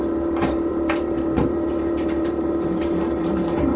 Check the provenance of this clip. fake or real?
fake